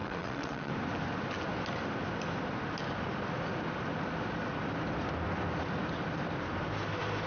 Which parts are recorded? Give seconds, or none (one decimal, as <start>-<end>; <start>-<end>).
0.7-7.3